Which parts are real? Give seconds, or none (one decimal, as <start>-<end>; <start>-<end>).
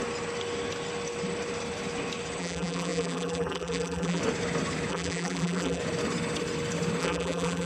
0.0-2.4; 4.2-4.9; 5.8-7.0